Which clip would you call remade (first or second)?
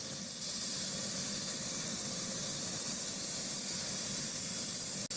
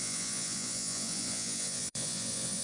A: second